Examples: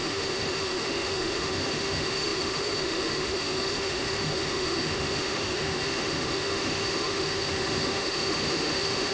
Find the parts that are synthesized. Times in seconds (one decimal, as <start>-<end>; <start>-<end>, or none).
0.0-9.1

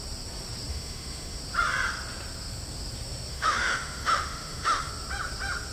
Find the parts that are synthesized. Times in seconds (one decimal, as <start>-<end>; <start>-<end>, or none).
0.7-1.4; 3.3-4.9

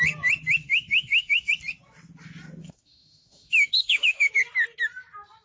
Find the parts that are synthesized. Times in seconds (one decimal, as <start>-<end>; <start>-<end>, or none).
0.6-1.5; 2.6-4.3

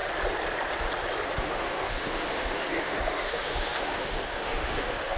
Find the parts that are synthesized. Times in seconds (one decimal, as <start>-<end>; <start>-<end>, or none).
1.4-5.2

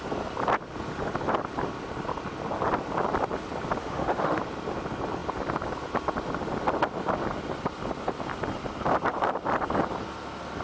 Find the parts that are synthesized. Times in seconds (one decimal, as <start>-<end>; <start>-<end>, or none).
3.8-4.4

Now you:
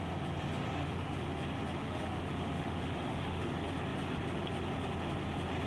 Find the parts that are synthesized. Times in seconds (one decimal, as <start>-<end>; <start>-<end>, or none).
0.8-1.3; 1.8-3.5

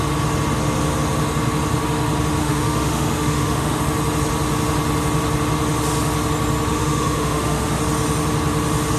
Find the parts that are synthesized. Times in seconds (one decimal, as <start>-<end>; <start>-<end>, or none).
2.4-3.8; 6.7-7.8

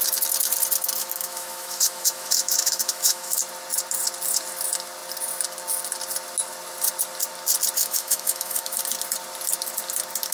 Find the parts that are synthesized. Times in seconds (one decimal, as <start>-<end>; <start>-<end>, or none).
1.0-3.4; 7.8-8.8